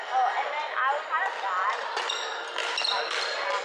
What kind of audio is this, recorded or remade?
recorded